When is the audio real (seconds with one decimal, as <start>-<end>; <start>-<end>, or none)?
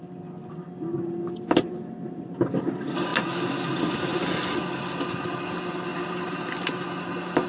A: 0.0-7.5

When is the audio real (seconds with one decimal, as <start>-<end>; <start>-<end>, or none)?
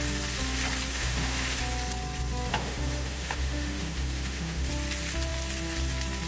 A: 0.0-0.9; 1.6-2.5; 4.7-6.3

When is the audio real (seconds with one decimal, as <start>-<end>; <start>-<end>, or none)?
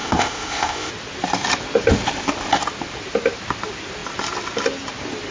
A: 0.9-5.3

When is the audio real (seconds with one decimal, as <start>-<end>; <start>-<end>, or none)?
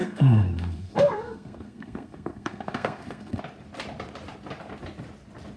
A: 3.4-5.6